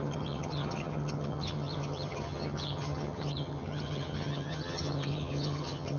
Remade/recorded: remade